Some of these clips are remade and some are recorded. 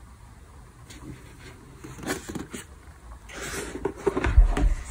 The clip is recorded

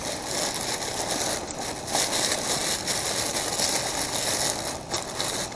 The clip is recorded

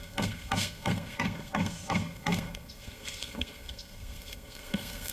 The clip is remade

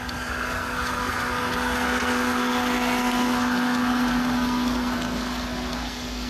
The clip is remade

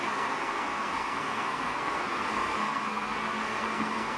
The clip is remade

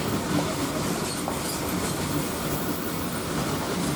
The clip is recorded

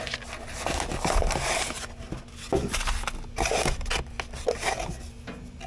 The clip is recorded